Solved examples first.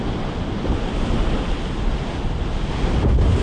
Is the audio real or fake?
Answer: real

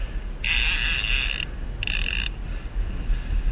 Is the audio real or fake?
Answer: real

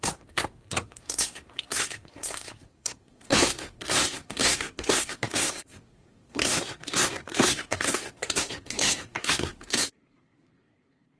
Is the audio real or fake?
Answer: fake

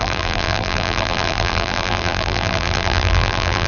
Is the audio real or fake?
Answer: fake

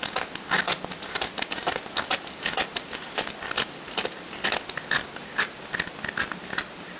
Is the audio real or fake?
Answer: real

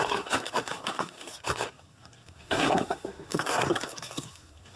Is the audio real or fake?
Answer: fake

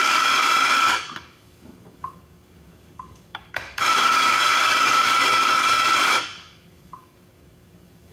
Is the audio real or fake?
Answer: fake